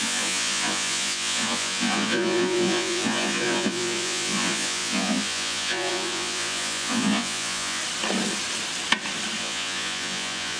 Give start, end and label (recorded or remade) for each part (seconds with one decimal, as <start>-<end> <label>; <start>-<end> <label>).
0.0-7.8 remade; 7.8-9.4 recorded; 9.4-10.6 remade